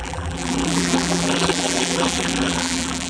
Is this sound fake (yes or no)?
yes